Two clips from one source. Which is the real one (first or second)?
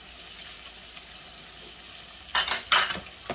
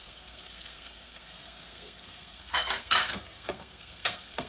first